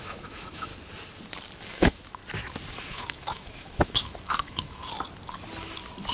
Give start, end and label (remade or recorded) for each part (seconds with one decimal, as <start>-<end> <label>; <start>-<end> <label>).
0.0-0.7 remade; 0.7-1.7 recorded; 1.7-2.2 remade; 2.2-2.9 recorded; 2.9-4.8 remade; 4.8-6.1 recorded